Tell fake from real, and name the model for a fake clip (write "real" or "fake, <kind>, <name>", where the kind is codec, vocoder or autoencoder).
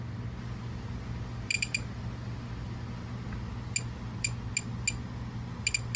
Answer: real